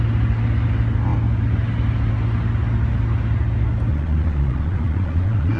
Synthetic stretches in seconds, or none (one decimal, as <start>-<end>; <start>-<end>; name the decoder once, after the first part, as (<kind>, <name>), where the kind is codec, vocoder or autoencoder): 3.9-5.6 (vocoder, Vocos)